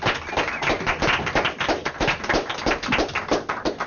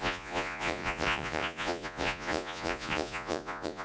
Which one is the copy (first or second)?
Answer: second